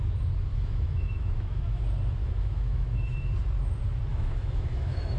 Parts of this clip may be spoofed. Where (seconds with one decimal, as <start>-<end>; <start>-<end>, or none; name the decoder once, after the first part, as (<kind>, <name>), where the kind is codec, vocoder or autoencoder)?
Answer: 0.5-1.8 (autoencoder, DAC-VAE); 2.2-3.3; 4.1-5.2